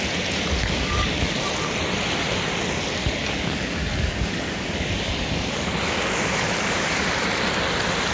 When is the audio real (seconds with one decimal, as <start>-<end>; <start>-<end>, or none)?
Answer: 0.0-0.6; 1.3-3.0; 7.0-8.1